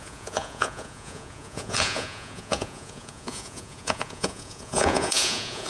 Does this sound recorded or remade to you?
remade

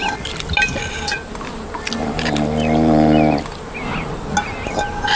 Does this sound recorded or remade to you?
recorded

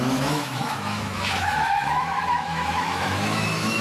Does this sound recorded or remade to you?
remade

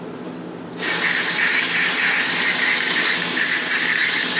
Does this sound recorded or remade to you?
recorded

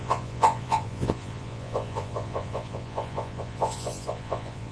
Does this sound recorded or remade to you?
remade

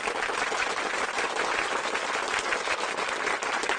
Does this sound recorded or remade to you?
recorded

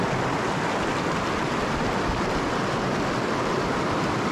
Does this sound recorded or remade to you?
recorded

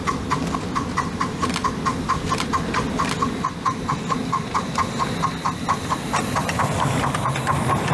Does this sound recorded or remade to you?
recorded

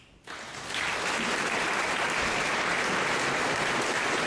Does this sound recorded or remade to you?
recorded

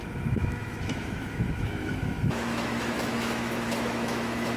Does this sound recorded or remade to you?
remade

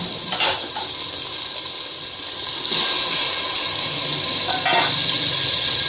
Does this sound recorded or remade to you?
recorded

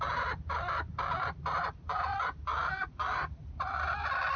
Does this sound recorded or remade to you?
recorded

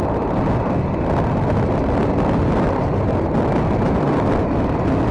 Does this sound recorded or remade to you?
recorded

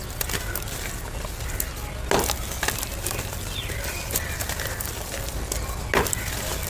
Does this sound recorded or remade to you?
recorded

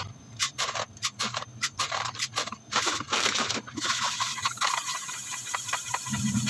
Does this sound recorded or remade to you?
remade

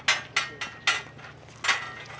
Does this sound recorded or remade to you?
recorded